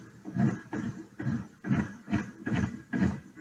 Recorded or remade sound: remade